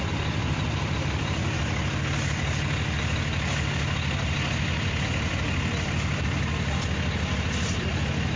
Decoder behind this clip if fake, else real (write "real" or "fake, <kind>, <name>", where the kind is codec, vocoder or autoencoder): real